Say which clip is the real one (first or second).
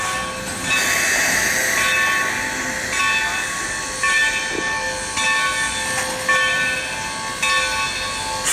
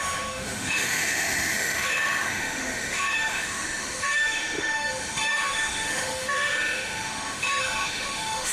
first